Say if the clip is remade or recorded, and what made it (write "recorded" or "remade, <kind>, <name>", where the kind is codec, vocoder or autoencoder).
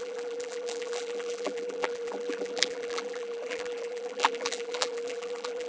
remade, vocoder, BigVGAN v2